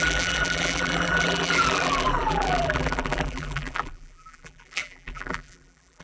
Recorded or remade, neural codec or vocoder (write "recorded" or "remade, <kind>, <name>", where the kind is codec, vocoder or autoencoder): remade, vocoder, BigVGAN v2